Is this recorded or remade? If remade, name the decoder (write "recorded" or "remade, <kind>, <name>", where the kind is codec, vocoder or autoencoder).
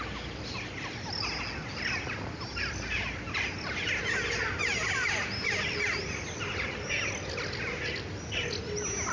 recorded